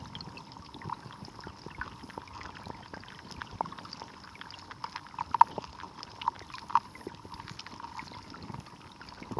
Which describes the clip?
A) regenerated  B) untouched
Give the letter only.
B